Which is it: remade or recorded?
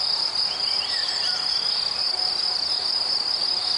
recorded